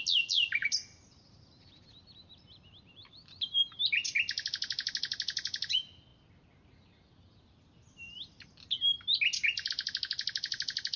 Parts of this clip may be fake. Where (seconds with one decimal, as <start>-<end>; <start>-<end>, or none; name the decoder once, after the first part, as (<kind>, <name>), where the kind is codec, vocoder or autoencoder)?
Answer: 0.6-3.6 (vocoder, BigVGAN v2)